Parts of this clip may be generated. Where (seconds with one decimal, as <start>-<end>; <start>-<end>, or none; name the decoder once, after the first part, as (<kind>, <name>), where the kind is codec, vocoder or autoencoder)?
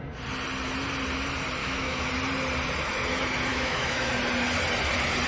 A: 1.6-2.1 (autoencoder, DAC-VAE); 3.5-4.1